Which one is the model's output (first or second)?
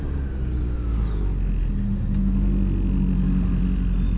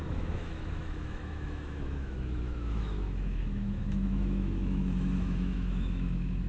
second